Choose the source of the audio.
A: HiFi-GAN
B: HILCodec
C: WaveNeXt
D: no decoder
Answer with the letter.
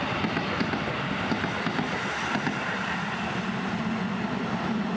D